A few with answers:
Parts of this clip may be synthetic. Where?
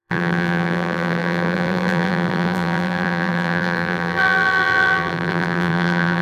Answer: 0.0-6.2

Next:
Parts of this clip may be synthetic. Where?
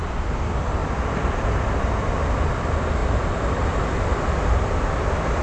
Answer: 0.8-1.8; 3.0-3.5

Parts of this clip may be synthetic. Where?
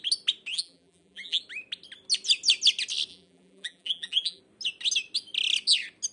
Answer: 0.5-1.4; 3.1-4.4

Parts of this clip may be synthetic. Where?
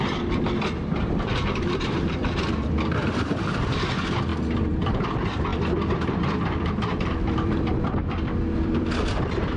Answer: 0.0-5.5; 6.1-9.6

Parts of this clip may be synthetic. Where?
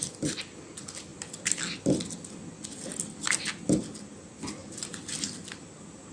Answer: none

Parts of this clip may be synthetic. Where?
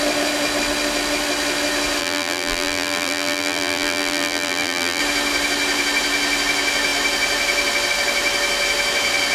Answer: 2.0-5.0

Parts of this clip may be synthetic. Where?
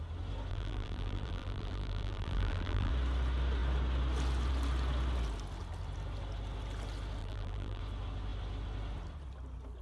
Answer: 0.5-2.9; 7.2-7.8